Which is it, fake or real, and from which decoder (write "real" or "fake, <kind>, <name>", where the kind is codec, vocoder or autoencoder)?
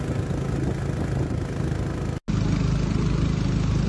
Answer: real